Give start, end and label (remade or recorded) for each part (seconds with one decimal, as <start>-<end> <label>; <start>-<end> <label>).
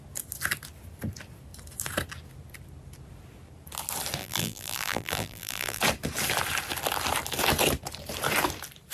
0.0-4.2 recorded; 4.2-5.8 remade; 5.8-8.9 recorded